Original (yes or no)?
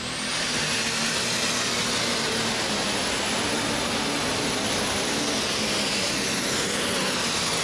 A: yes